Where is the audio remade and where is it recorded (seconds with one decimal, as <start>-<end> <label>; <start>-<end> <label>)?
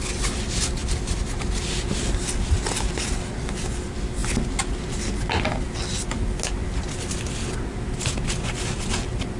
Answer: 0.0-9.4 recorded